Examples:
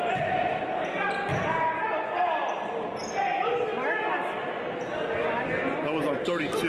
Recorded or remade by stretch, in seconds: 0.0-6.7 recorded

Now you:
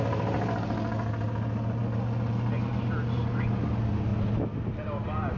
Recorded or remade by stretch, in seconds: 0.0-5.4 recorded

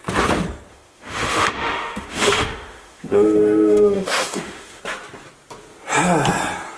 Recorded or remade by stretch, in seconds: 0.0-0.7 recorded; 0.7-4.8 remade; 4.8-6.8 recorded

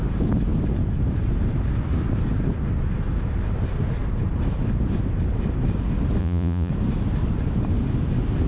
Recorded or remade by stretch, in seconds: 0.0-6.2 recorded; 6.2-6.7 remade; 6.7-8.5 recorded

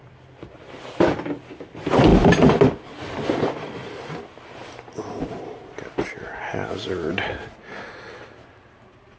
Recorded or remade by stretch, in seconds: 0.0-2.1 recorded; 2.1-2.6 remade; 2.6-4.6 recorded; 4.6-5.4 remade; 5.4-9.2 recorded

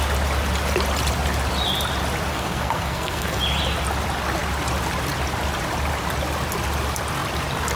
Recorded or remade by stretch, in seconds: 0.0-2.3 recorded; 2.3-3.4 remade; 3.4-7.8 recorded